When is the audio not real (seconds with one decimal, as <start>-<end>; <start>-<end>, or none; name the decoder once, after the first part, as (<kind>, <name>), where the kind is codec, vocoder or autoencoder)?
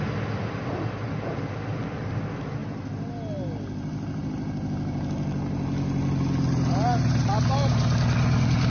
none